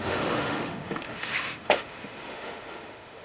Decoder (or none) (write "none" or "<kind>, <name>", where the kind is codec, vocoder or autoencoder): autoencoder, DAC-VAE